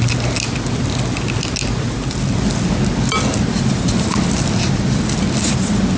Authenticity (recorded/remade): recorded